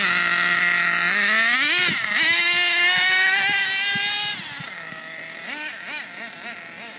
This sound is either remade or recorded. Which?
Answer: recorded